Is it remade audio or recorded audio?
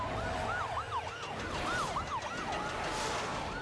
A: recorded